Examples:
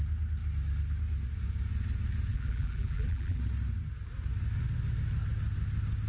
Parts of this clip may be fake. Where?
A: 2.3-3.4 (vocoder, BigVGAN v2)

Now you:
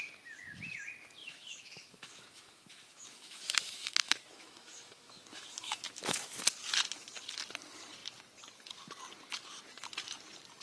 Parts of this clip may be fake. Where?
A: 1.2-6.4 (autoencoder, DAC-VAE)

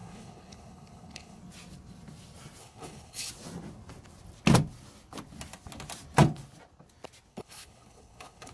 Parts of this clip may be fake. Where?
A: 0.0-1.4 (codec, HILCodec); 2.6-3.3; 7.3-8.5

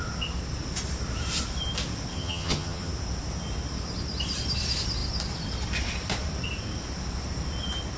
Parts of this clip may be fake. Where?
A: 2.1-2.9 (vocoder, HiFi-GAN)

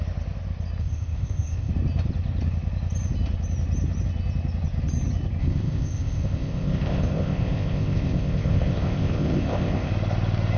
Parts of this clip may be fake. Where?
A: 0.8-1.7 (codec, ZipCodec); 5.4-9.9

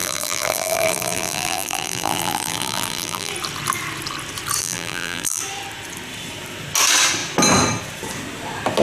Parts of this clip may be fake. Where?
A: 0.0-3.3 (vocoder, BigVGAN v2); 4.6-5.4

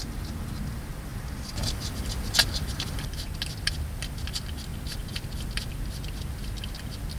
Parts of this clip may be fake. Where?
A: none

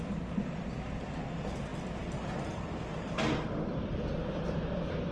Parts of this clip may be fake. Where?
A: 1.7-5.1 (vocoder, BigVGAN v2)